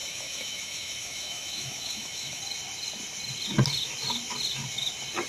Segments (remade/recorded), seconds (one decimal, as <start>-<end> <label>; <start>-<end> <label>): 0.0-2.4 remade; 2.4-5.3 recorded